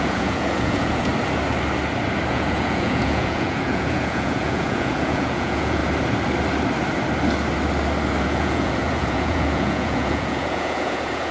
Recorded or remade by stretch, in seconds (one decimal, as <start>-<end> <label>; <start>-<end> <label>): 0.0-1.1 remade; 1.1-2.3 recorded; 2.3-5.8 remade; 5.8-8.2 recorded; 8.2-11.3 remade